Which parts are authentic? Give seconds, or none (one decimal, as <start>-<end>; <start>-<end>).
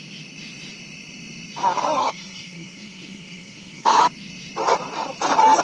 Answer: 0.0-2.0; 4.0-5.6